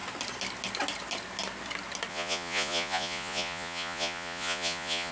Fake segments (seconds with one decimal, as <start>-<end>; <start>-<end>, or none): 2.1-5.1